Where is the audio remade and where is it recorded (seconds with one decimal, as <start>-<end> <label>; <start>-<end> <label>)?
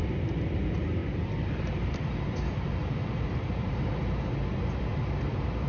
0.0-1.0 recorded; 1.0-2.8 remade; 2.8-5.7 recorded